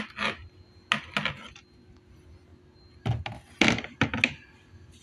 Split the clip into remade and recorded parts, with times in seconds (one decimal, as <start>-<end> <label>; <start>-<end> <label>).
0.0-5.0 recorded